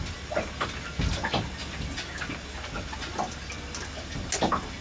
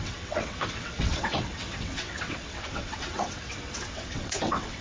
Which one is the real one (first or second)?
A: first